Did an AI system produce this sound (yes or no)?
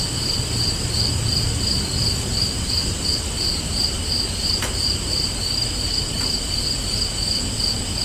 no